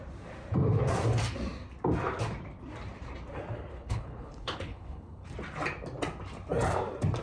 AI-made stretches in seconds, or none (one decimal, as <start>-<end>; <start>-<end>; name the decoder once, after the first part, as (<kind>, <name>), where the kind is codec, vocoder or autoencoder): 3.7-5.3 (codec, HILCodec)